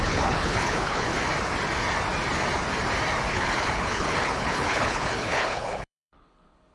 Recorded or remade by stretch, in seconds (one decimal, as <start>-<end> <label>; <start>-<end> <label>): 0.0-1.1 remade; 1.1-3.3 recorded; 3.3-6.7 remade

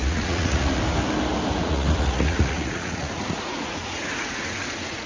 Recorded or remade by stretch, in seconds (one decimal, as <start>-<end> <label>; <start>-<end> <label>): 0.0-0.8 remade; 0.8-1.6 recorded; 1.6-5.1 remade

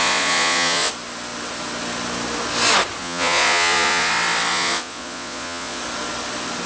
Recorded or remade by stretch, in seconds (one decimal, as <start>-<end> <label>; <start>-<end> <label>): 0.0-0.9 remade; 0.9-3.0 recorded; 3.0-4.1 remade; 4.1-4.5 recorded; 4.5-5.8 remade; 5.8-6.7 recorded